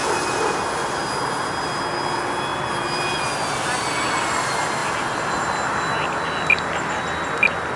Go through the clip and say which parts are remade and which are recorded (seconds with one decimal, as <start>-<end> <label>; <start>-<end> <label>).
0.0-7.8 recorded

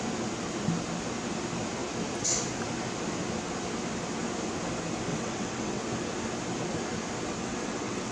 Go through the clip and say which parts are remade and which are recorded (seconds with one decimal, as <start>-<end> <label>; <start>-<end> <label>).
0.0-5.1 recorded; 5.1-5.8 remade; 5.8-7.4 recorded; 7.4-8.1 remade

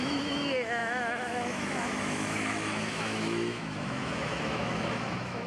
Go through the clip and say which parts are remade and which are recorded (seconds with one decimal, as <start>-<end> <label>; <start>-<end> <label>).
0.0-5.5 remade

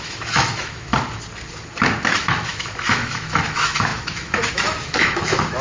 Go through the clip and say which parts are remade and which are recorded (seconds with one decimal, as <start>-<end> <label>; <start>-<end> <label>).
0.0-0.9 remade; 0.9-2.1 recorded; 2.1-5.6 remade

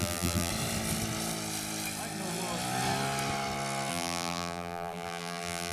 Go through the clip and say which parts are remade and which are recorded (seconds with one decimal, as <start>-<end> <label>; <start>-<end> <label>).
0.0-0.5 remade; 0.5-3.9 recorded; 3.9-5.7 remade

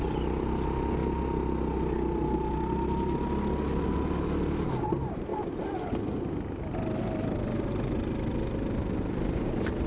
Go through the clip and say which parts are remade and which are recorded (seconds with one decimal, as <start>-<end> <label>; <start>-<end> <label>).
0.0-9.9 recorded

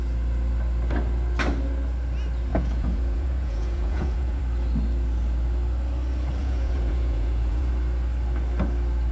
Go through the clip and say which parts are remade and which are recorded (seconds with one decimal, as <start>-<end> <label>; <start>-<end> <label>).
0.0-2.5 recorded; 2.5-4.4 remade; 4.4-6.4 recorded; 6.4-7.7 remade; 7.7-9.1 recorded